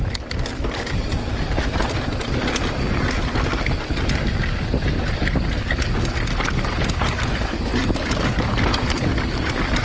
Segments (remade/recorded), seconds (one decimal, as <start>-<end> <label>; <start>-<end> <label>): 0.0-9.8 recorded